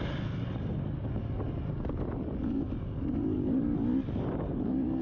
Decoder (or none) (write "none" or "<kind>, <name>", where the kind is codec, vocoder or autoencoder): none